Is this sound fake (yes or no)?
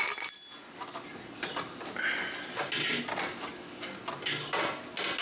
no